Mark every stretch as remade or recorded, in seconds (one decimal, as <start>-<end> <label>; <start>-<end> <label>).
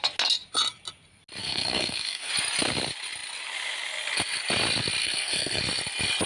0.0-1.4 recorded; 1.4-2.3 remade; 2.3-5.0 recorded; 5.0-5.6 remade; 5.6-6.3 recorded